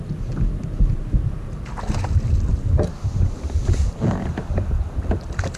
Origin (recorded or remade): recorded